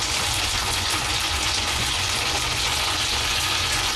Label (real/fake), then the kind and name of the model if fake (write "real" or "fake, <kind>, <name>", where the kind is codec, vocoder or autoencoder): fake, vocoder, Vocos